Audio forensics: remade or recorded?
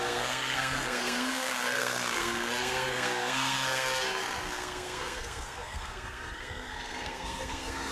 remade